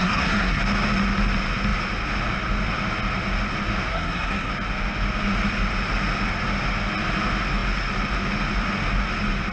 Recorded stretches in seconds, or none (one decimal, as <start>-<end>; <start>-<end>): 0.6-3.9; 4.5-9.5